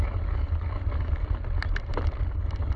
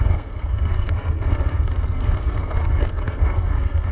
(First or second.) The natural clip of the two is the first